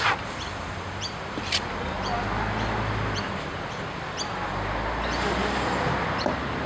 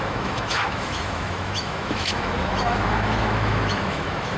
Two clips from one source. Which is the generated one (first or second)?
second